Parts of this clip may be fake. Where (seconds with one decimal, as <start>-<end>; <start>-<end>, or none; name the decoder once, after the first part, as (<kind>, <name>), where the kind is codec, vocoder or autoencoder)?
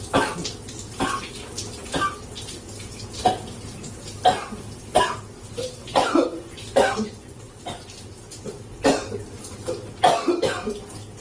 5.8-7.5 (vocoder, Vocos)